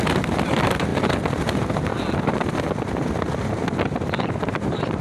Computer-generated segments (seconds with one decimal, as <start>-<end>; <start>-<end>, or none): 0.0-0.9; 1.4-1.9; 4.5-5.0